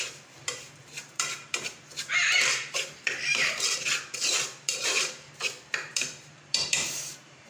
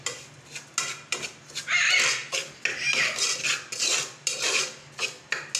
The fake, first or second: first